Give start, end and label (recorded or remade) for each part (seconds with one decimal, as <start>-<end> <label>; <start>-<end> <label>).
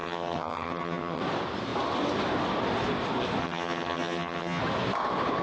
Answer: 0.0-1.2 remade; 1.2-3.4 recorded; 3.4-4.6 remade; 4.6-5.4 recorded